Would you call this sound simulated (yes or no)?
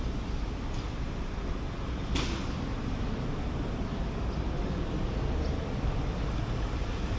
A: no